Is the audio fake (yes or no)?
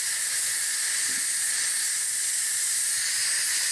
no